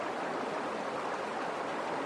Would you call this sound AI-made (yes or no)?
no